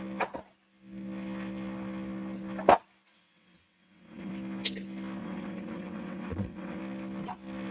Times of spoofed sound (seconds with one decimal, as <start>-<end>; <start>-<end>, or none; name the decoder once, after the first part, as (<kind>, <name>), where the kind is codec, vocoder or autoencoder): 3.1-4.3 (vocoder, WaveNeXt); 5.2-6.8